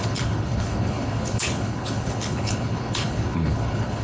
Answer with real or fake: fake